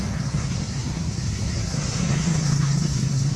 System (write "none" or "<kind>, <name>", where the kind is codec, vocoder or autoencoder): codec, SNAC